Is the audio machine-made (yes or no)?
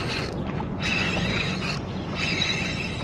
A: yes